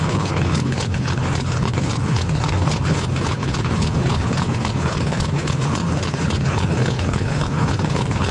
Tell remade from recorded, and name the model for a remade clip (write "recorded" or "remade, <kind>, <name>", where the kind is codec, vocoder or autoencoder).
remade, codec, HILCodec